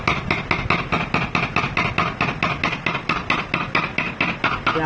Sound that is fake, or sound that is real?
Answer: real